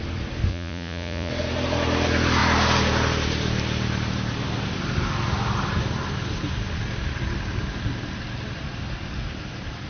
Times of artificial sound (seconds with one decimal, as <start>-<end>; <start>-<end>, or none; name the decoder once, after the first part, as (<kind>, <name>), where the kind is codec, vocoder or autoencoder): 0.5-1.3 (vocoder, Vocos)